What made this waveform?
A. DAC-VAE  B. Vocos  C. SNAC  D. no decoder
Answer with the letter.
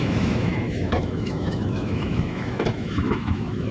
A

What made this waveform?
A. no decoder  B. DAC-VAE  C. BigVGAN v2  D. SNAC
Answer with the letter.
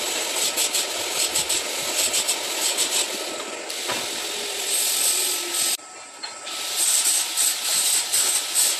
A